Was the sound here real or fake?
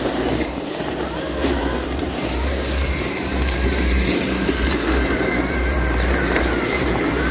fake